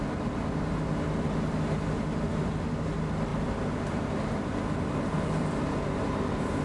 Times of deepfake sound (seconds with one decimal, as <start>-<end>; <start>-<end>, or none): none